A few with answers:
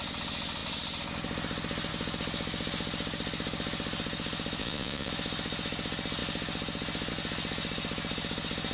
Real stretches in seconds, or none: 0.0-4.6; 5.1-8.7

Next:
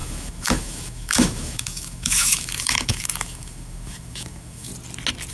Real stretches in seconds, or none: 4.7-5.3

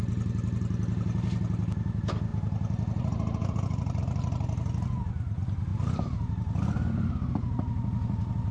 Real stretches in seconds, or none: 0.0-8.5

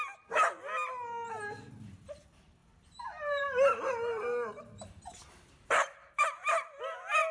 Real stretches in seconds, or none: 0.0-2.6; 6.2-7.3

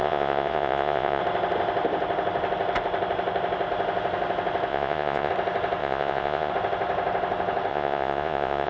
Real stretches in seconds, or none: 1.2-4.7; 5.3-5.8; 6.5-7.7

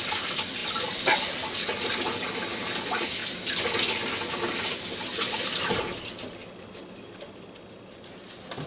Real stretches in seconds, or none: 0.0-8.7

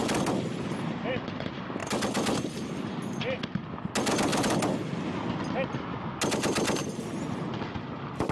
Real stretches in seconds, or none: 1.1-1.8; 2.6-6.8; 7.4-8.3

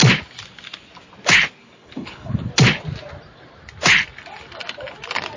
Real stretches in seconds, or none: 0.0-1.6; 2.5-5.4